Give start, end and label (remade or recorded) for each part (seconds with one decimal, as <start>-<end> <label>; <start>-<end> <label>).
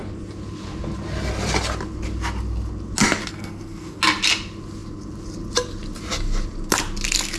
0.0-3.3 recorded; 3.3-4.0 remade; 4.0-7.4 recorded